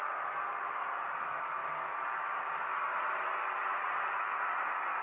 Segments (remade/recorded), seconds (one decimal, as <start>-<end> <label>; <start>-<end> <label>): 0.0-1.6 recorded; 1.6-4.6 remade; 4.6-5.0 recorded